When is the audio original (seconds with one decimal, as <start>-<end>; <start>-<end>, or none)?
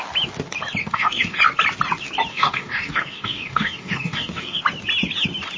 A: 0.0-0.8; 1.4-2.3; 4.6-5.6